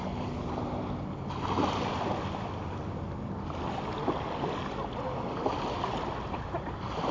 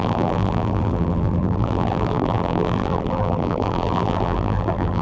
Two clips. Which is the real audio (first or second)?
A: first